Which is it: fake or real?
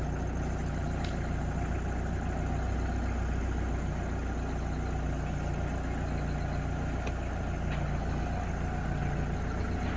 real